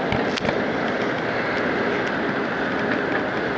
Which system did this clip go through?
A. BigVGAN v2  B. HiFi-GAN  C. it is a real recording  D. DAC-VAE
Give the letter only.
C